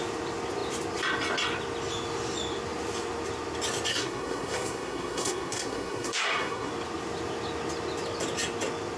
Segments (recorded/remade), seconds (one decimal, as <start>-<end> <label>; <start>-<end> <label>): 0.0-3.9 recorded; 3.9-6.7 remade; 6.7-9.0 recorded